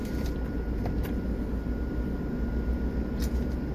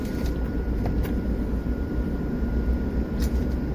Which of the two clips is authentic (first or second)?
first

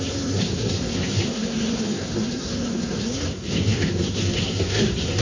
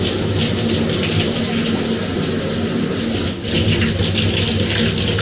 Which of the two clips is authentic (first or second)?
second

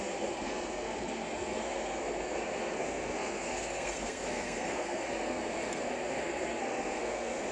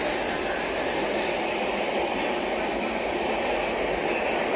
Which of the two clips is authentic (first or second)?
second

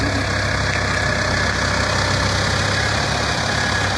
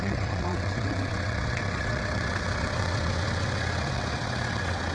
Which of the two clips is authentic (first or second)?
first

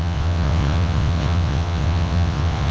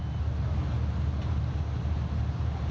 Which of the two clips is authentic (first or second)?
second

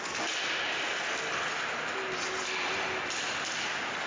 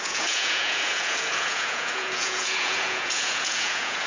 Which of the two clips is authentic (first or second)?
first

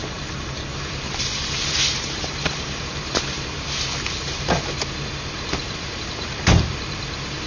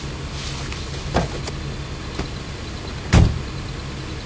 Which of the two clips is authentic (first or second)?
second